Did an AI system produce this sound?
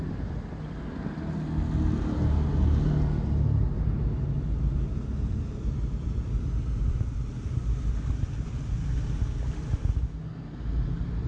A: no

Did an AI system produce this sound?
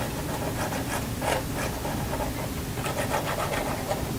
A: no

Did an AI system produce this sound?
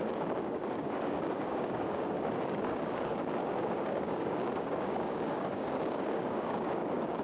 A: yes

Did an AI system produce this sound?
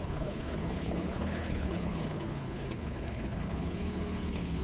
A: yes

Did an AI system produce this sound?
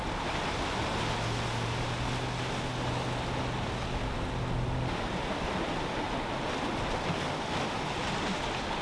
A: no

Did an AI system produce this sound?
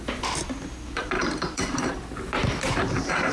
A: yes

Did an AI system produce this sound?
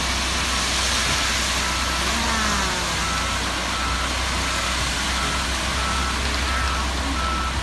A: no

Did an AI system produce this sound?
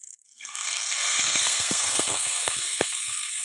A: yes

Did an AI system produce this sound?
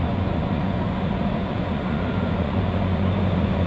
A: yes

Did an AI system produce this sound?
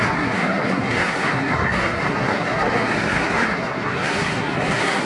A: yes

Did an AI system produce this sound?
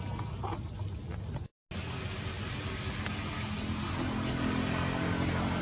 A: no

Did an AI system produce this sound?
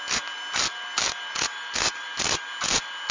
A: no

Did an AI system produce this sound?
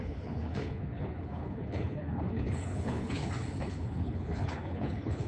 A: yes